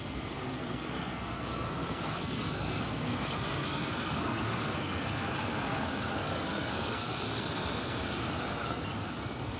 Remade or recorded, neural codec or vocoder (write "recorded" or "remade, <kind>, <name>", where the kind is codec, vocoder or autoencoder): remade, codec, SNAC